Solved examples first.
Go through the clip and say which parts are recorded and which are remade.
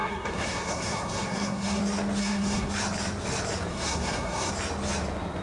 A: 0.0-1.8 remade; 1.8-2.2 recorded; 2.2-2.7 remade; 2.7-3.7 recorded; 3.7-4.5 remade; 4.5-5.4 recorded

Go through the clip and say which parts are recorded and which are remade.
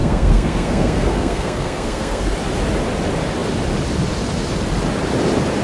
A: 0.0-2.3 remade; 2.3-5.6 recorded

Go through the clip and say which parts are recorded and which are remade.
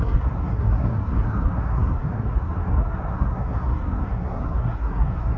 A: 0.0-5.4 remade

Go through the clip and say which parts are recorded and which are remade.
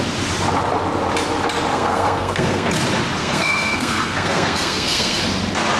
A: 0.0-1.7 recorded; 1.7-2.7 remade; 2.7-3.2 recorded; 3.2-5.2 remade; 5.2-5.8 recorded